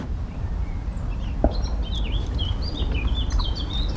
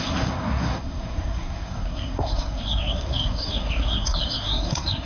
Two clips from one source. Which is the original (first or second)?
first